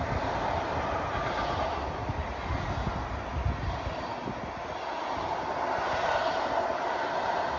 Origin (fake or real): real